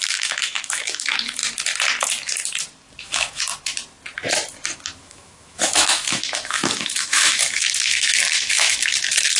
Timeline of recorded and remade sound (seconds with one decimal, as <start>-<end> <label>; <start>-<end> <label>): 0.0-1.4 remade; 1.4-3.0 recorded; 3.0-3.5 remade; 3.5-5.0 recorded; 5.0-9.4 remade

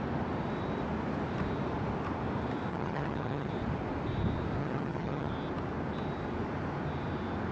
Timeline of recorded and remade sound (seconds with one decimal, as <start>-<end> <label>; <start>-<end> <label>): 0.0-2.7 recorded; 2.7-3.5 remade; 3.5-4.6 recorded; 4.6-5.3 remade; 5.3-7.5 recorded